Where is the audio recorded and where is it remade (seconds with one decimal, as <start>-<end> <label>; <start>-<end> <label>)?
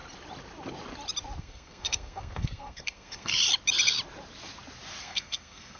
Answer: 0.0-1.4 recorded; 1.4-3.3 remade; 3.3-5.0 recorded; 5.0-5.8 remade